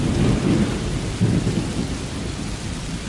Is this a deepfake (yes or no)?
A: no